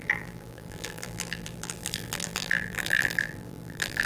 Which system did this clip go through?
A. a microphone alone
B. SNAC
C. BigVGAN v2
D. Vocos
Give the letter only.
C